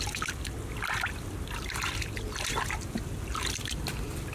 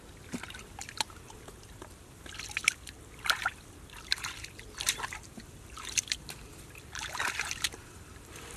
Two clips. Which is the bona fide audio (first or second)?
first